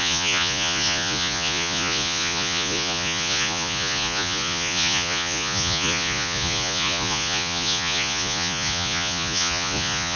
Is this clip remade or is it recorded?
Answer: remade